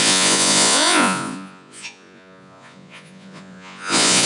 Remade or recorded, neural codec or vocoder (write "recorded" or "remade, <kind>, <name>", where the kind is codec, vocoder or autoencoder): remade, vocoder, Vocos